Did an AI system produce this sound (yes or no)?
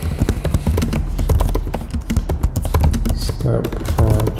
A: no